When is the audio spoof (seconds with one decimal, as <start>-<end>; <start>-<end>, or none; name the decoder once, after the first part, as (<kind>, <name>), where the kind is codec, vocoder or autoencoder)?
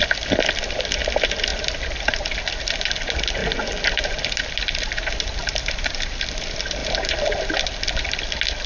none